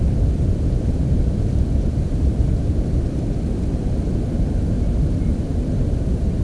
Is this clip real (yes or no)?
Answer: no